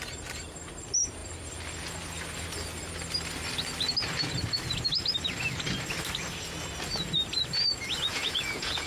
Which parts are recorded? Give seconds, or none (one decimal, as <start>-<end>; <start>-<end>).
0.0-8.1